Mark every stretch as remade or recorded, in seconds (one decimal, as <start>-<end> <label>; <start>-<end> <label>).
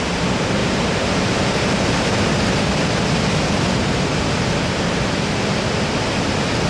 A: 0.0-0.6 recorded; 0.6-3.0 remade; 3.0-6.7 recorded